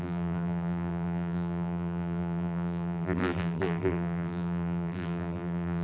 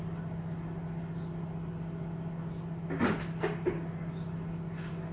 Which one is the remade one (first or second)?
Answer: first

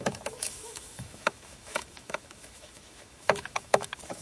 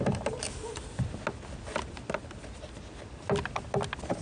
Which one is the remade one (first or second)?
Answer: first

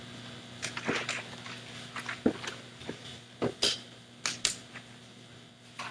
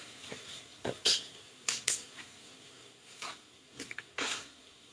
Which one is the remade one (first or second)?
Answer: second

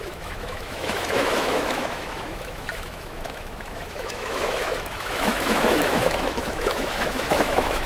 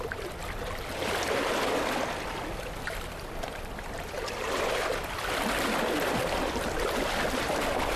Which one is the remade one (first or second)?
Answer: first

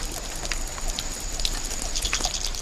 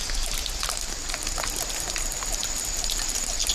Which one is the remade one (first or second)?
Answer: second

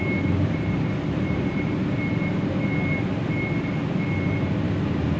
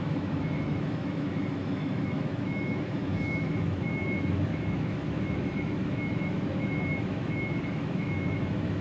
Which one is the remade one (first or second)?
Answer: second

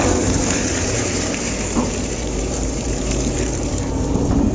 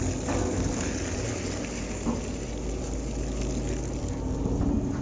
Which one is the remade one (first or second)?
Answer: first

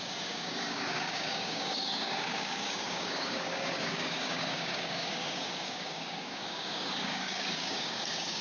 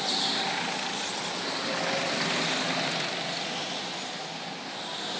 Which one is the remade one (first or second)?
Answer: first